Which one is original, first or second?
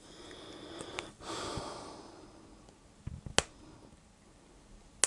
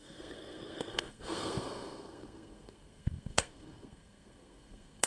first